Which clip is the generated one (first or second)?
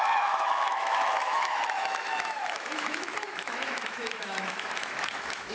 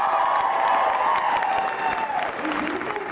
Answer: first